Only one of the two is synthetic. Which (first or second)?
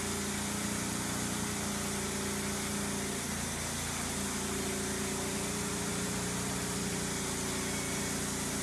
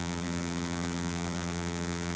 second